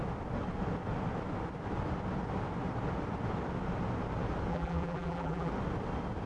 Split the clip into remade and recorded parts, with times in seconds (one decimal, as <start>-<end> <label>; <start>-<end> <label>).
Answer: 0.0-4.5 recorded; 4.5-5.5 remade; 5.5-6.3 recorded